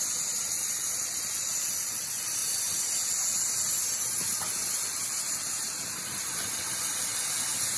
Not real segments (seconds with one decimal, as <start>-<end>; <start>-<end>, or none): none